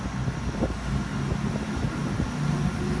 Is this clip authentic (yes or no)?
yes